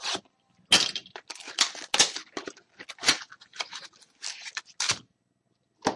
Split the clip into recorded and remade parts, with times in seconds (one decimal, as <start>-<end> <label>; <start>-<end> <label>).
0.0-6.0 recorded